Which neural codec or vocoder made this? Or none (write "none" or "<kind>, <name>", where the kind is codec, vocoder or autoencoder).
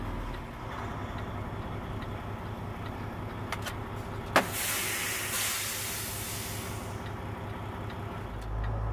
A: none